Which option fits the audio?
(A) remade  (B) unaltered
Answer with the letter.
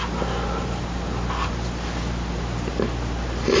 B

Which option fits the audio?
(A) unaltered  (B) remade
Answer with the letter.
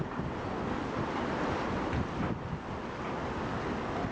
A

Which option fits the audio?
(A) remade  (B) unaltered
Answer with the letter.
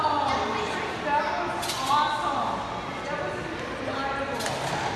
B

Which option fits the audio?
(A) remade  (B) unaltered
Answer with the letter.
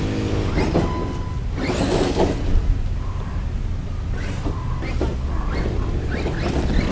B